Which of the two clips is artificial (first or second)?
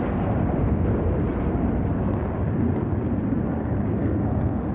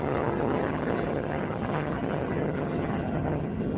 second